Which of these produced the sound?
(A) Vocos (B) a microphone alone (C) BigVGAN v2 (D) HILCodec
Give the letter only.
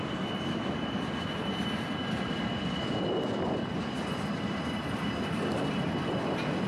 B